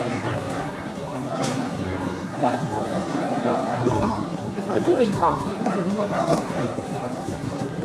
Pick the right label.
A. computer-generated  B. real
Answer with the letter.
A